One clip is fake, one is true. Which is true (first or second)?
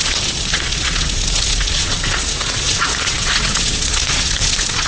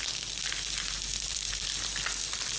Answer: second